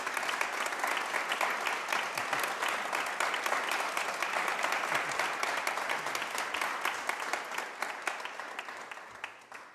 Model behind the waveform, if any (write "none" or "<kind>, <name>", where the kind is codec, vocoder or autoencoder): none